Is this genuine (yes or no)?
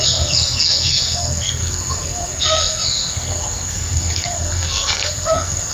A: no